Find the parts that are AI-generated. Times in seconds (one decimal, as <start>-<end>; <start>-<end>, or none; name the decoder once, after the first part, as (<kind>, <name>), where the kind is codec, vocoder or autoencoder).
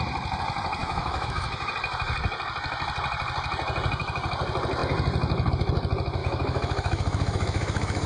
0.8-1.7 (autoencoder, DAC-VAE); 6.2-8.1